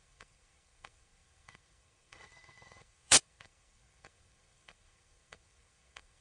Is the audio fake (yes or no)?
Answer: yes